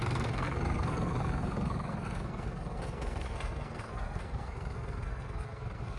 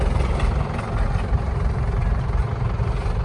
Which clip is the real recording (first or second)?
second